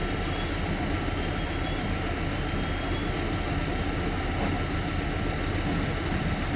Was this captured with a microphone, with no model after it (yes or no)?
yes